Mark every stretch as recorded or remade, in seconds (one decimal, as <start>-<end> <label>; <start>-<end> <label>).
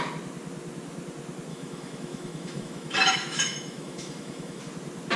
0.0-1.5 recorded; 1.5-4.6 remade; 4.6-5.2 recorded